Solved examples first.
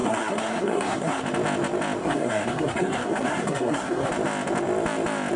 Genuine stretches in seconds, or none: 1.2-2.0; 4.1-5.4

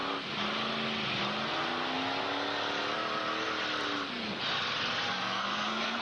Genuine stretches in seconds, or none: 0.0-5.1

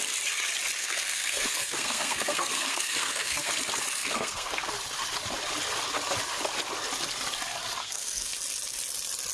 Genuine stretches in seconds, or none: 0.0-0.8; 3.5-4.0; 4.7-7.8; 8.3-9.3

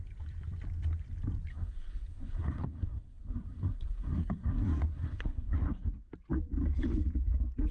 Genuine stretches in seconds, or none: 0.0-1.5; 6.1-7.7